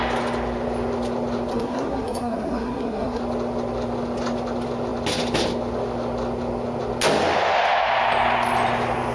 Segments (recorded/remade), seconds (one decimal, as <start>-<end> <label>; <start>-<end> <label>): 0.0-1.5 recorded; 1.5-3.2 remade; 3.2-9.1 recorded